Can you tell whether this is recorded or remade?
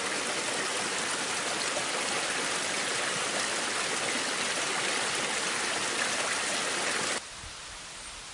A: recorded